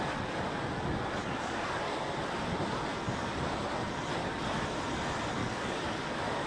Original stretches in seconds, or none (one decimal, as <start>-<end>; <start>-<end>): 0.0-1.2; 1.9-5.4; 6.0-6.5